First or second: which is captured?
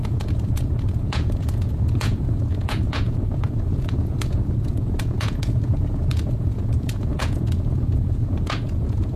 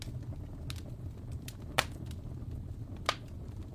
second